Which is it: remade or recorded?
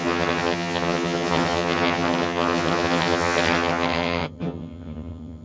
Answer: remade